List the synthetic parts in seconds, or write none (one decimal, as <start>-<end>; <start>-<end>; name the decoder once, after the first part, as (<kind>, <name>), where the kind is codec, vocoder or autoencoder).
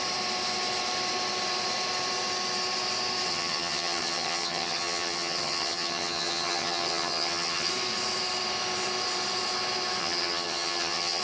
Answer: 3.3-7.7 (vocoder, HiFi-GAN); 10.0-11.2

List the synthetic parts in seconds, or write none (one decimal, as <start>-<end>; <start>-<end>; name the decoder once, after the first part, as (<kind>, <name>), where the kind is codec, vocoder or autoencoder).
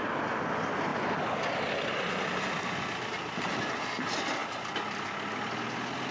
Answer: none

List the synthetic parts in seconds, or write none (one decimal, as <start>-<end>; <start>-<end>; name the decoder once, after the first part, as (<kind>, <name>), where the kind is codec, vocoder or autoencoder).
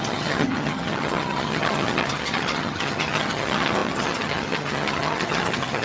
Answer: 0.0-5.8 (vocoder, HiFi-GAN)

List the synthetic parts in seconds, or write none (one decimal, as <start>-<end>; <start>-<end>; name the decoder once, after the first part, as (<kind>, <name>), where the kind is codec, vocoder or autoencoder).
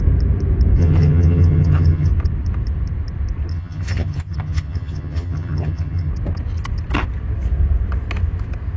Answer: 0.8-2.1 (vocoder, HiFi-GAN); 3.5-6.1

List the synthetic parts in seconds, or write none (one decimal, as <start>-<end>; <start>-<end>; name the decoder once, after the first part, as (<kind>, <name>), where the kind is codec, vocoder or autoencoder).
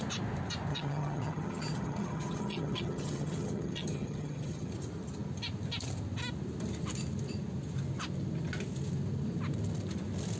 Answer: 0.7-4.7 (vocoder, HiFi-GAN)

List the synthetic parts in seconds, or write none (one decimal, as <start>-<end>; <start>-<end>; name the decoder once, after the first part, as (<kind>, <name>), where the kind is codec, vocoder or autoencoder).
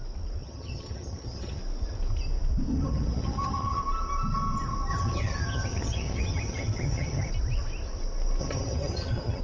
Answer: 0.4-1.6 (vocoder, HiFi-GAN); 2.7-3.8; 4.9-7.3; 8.4-9.4